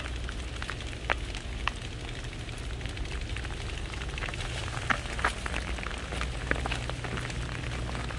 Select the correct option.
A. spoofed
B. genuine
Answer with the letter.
B